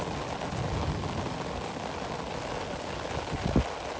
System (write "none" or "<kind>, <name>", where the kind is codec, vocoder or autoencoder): none